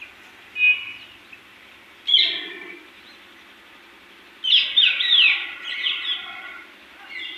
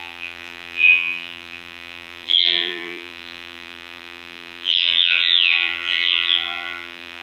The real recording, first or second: first